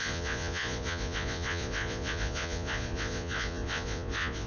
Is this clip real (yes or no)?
no